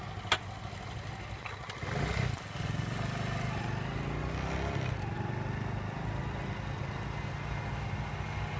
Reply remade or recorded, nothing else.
recorded